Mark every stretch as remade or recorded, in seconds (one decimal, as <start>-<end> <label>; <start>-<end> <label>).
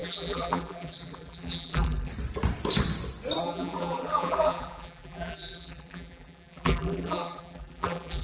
0.0-2.1 remade; 2.1-3.4 recorded; 3.4-8.2 remade